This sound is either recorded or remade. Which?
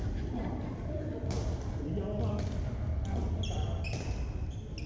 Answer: recorded